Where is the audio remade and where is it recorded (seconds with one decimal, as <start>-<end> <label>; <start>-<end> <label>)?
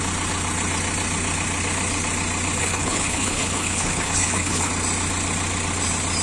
0.0-2.6 recorded; 2.6-4.7 remade; 4.7-6.2 recorded